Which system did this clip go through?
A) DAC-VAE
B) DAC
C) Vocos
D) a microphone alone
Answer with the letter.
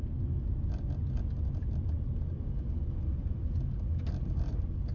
D